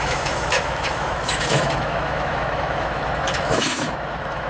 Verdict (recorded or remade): remade